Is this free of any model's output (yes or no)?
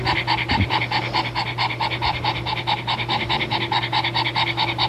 yes